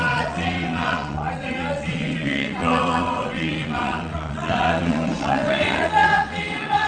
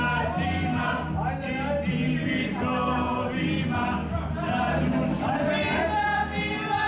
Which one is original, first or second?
second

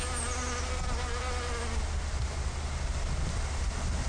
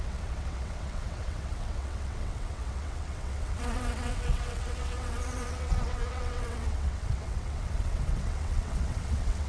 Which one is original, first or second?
first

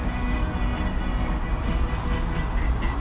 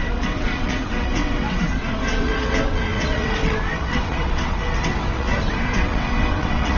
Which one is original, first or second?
first